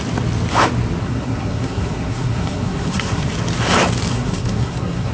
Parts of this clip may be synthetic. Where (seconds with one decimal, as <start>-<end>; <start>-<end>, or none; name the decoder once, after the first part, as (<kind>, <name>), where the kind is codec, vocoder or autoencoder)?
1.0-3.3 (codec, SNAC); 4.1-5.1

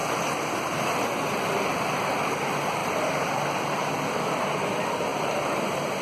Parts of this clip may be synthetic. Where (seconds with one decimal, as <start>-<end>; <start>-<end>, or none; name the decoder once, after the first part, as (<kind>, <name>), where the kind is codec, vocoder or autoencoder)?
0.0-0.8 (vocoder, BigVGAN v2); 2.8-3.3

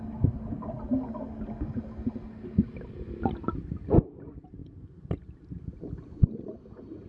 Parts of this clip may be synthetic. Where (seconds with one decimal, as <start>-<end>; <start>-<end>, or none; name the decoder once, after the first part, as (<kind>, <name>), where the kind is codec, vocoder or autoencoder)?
none

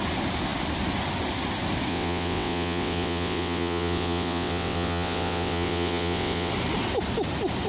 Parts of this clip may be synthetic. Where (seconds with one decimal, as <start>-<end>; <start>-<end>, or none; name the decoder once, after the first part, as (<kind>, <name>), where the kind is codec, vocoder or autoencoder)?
1.9-6.5 (vocoder, WaveNeXt)

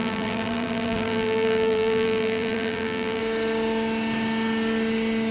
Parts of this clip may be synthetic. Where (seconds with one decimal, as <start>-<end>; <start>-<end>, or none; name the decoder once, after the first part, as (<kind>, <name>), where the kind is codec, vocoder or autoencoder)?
0.0-3.2 (vocoder, BigVGAN v2)

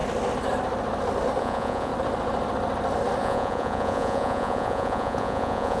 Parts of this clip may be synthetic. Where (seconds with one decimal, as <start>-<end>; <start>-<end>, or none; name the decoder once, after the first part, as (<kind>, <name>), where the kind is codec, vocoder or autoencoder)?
1.4-1.9 (vocoder, Vocos); 3.2-5.8

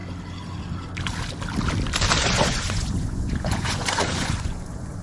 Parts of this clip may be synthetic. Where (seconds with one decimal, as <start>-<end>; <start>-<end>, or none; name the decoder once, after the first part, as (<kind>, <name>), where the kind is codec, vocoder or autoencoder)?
2.2-5.0 (vocoder, Vocos)